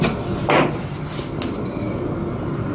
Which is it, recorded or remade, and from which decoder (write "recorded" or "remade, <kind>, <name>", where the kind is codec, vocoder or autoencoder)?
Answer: recorded